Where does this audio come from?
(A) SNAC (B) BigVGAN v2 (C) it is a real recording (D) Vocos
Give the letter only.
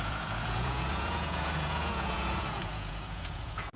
D